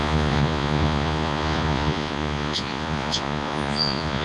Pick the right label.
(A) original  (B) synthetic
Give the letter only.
B